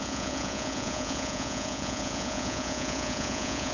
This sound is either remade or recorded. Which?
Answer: remade